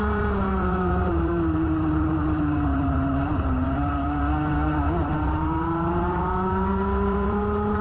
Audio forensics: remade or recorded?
remade